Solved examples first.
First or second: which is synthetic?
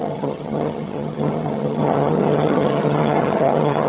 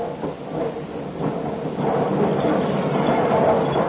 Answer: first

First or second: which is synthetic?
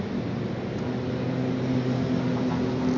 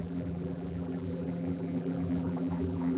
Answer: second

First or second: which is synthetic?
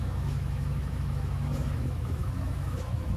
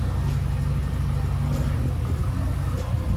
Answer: first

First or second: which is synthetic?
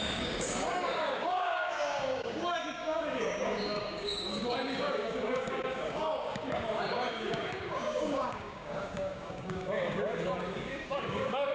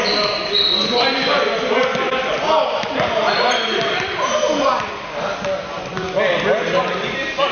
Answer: first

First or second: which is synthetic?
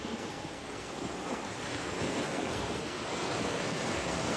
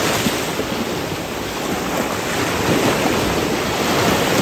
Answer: first